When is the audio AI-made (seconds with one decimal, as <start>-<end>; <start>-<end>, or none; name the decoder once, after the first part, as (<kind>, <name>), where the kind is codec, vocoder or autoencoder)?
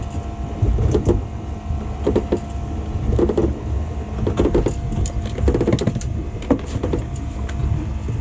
none